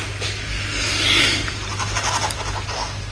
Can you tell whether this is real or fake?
real